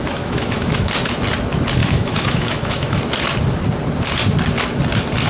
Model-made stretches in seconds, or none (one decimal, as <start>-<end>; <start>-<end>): 0.0-0.9; 1.8-3.0